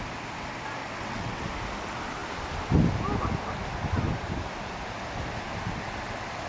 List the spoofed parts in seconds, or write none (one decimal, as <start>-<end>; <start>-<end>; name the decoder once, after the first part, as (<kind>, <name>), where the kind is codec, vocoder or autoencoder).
0.8-1.4 (vocoder, WaveNeXt)